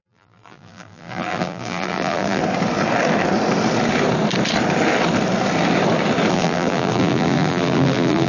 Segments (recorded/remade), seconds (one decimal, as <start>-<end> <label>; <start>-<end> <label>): 0.0-2.4 remade; 2.4-6.3 recorded; 6.3-8.3 remade

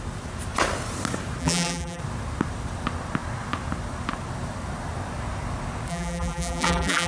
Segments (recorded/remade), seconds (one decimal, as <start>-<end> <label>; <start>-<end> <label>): 0.0-1.4 recorded; 1.4-2.0 remade; 2.0-5.9 recorded; 5.9-7.1 remade

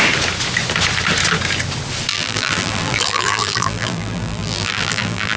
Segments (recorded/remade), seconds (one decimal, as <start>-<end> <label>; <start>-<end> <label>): 0.0-2.1 recorded; 2.1-5.4 remade

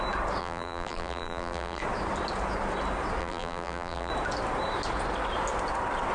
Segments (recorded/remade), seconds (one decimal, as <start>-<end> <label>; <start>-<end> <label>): 0.0-0.4 recorded; 0.4-1.8 remade; 1.8-3.2 recorded; 3.2-4.1 remade; 4.1-6.1 recorded

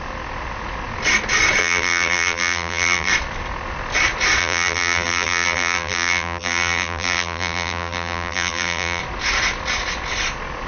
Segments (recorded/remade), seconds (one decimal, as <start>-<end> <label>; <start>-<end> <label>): 0.0-1.6 recorded; 1.6-3.1 remade; 3.1-4.4 recorded; 4.4-9.0 remade; 9.0-10.7 recorded

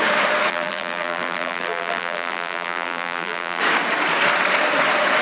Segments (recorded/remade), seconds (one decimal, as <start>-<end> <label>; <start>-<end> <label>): 0.0-0.5 recorded; 0.5-3.6 remade; 3.6-5.2 recorded